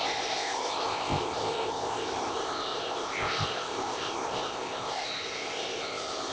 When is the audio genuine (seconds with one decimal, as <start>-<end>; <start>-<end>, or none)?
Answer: none